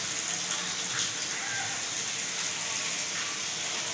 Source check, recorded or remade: recorded